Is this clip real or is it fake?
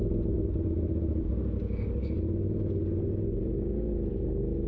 real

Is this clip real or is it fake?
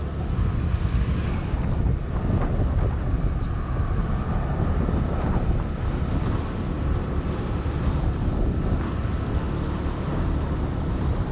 real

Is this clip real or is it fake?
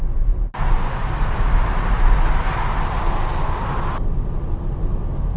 real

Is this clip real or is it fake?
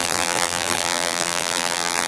fake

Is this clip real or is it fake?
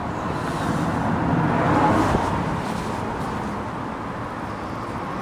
real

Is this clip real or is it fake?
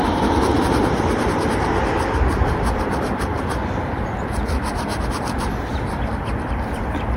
fake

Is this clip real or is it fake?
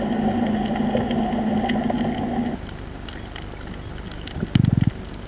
real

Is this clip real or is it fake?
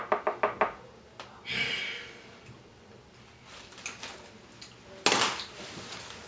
real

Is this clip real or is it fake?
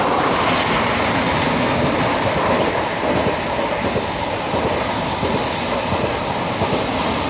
real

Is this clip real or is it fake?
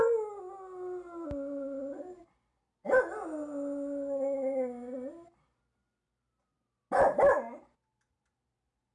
real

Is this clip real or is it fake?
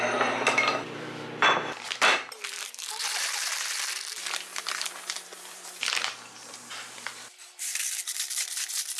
fake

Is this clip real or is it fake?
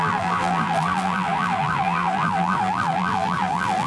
fake